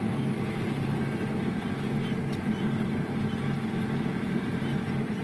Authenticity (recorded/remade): recorded